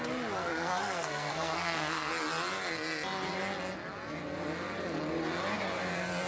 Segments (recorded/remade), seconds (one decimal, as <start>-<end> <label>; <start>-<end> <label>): 0.0-0.4 recorded; 0.4-2.1 remade; 2.1-6.3 recorded